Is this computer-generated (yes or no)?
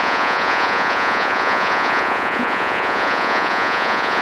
yes